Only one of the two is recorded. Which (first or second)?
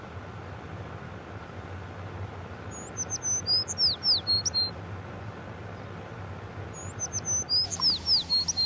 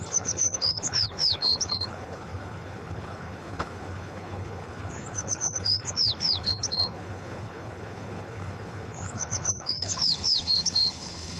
first